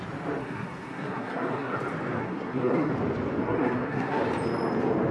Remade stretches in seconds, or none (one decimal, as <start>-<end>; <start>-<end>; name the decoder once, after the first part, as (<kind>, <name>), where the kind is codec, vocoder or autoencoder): 0.4-1.8 (codec, SNAC); 2.2-2.9; 3.4-4.2